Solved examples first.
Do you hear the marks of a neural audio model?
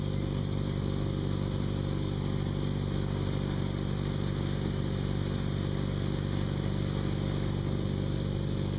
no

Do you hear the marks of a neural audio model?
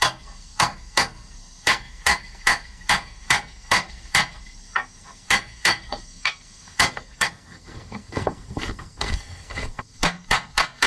yes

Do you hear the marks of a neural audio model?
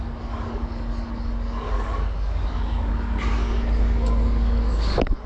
yes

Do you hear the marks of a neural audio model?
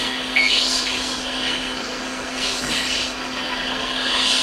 yes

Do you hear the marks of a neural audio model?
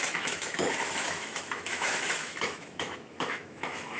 yes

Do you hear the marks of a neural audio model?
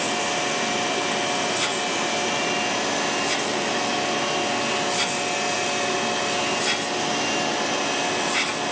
no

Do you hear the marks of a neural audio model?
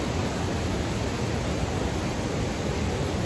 no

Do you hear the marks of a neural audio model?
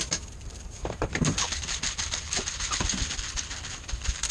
yes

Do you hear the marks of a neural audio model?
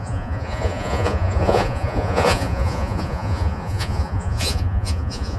yes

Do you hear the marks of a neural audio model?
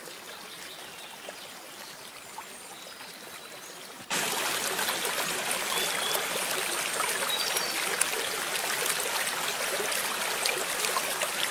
no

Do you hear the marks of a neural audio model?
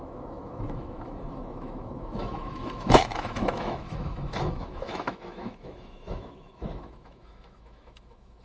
yes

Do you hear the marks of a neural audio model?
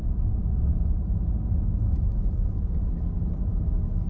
no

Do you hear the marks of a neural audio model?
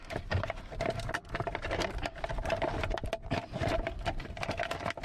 no